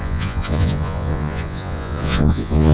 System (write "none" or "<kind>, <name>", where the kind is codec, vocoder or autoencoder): vocoder, Vocos